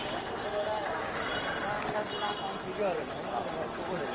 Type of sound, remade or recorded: recorded